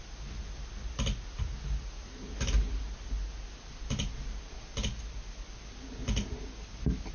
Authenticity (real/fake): real